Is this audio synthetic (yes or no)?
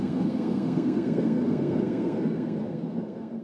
yes